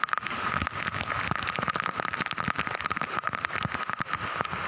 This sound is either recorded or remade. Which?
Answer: recorded